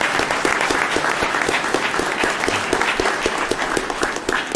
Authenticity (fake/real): real